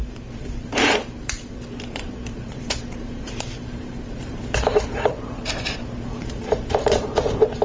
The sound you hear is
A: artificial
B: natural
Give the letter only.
A